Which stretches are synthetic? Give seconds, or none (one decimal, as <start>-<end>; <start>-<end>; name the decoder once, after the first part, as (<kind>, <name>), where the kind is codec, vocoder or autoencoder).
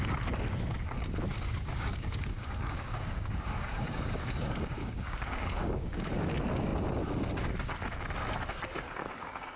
1.3-6.1 (codec, DAC)